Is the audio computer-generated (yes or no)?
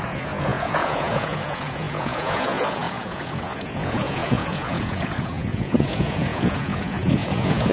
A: yes